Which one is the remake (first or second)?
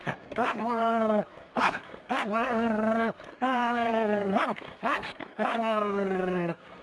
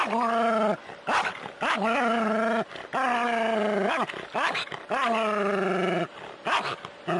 first